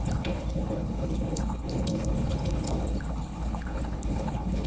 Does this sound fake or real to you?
fake